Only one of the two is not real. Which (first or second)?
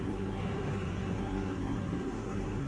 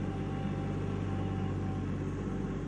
first